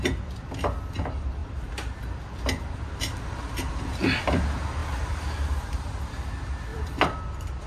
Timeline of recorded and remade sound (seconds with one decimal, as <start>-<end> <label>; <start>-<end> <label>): 0.0-6.7 recorded; 6.7-7.2 remade; 7.2-7.7 recorded